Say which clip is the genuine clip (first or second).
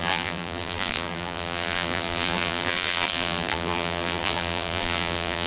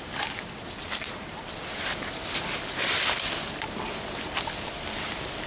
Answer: second